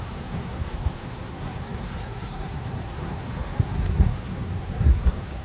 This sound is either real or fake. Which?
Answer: fake